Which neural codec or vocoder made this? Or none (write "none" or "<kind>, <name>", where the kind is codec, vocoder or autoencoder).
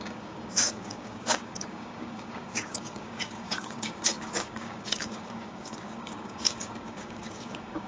codec, DAC